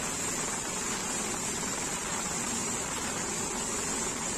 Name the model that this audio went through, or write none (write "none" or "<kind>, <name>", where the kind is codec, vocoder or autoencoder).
none